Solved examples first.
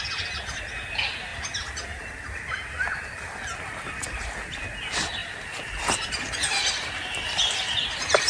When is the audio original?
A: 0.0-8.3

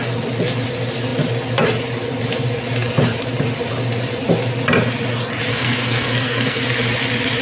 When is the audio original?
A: 0.0-5.5; 6.6-7.4

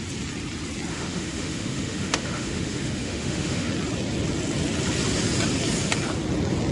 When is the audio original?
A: 0.0-0.9; 3.7-6.7

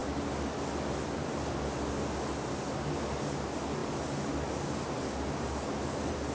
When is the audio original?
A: 0.0-6.3

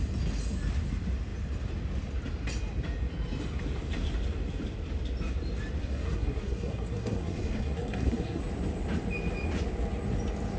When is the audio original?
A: 0.0-5.8; 8.4-10.6

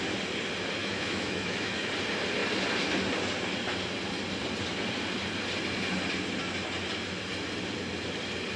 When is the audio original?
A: 0.0-0.8; 1.9-8.6

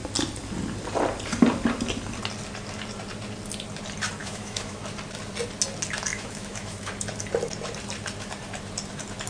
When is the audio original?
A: 0.0-4.2; 4.8-6.1; 6.9-9.3

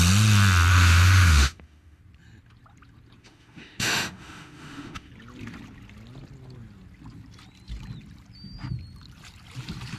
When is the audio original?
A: 0.0-0.7; 2.0-3.2; 5.1-10.0